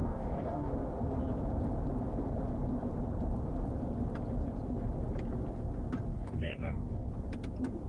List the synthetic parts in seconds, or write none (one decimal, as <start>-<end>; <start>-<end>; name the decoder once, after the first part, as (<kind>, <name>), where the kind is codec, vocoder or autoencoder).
0.0-0.7 (codec, DAC); 6.1-7.1